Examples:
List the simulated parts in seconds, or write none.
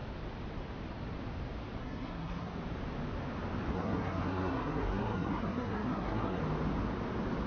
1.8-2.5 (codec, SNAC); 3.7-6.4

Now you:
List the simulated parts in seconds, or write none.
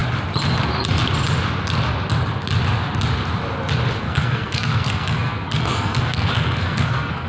4.0-7.3 (codec, SNAC)